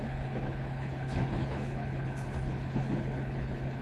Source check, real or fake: fake